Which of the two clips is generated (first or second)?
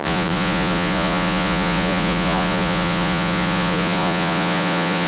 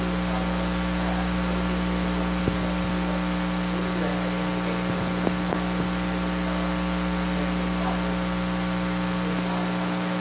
first